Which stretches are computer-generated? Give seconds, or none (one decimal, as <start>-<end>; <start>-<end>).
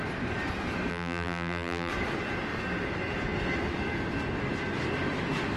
0.9-1.9